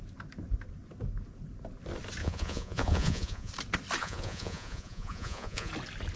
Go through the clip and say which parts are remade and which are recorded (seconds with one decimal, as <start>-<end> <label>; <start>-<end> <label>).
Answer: 0.0-2.2 recorded; 2.2-3.5 remade; 3.5-4.0 recorded; 4.0-5.7 remade; 5.7-6.2 recorded